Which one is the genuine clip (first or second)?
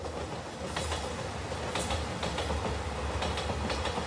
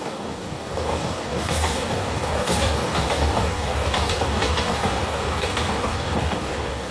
first